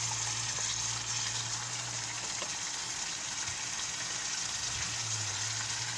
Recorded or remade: recorded